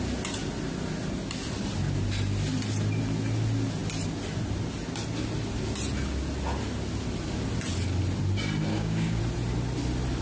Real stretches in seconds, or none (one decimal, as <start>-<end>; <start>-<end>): 0.0-8.7; 9.2-10.2